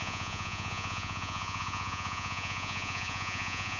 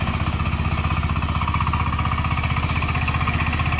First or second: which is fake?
first